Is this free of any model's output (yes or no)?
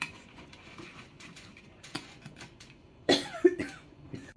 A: no